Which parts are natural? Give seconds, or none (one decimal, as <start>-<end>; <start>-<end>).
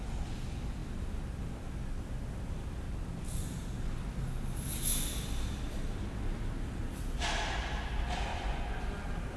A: 0.0-8.3; 8.8-9.4